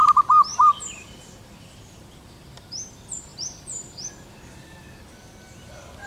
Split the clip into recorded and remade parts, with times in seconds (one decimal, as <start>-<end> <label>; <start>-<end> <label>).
0.0-0.5 recorded; 0.5-2.8 remade; 2.8-3.3 recorded; 3.3-4.1 remade; 4.1-6.1 recorded